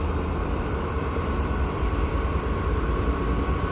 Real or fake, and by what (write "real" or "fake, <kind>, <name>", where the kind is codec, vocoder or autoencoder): fake, vocoder, BigVGAN v2